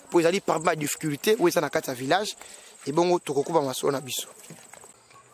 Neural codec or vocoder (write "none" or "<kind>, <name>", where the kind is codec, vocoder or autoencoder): none